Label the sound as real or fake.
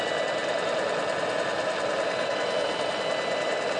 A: real